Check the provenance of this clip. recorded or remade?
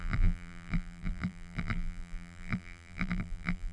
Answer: remade